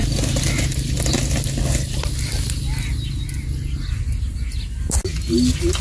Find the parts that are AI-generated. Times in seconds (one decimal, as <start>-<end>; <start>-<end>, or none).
none